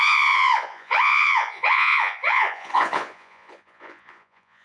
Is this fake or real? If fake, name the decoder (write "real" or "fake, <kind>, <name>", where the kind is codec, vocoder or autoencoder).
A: fake, vocoder, Vocos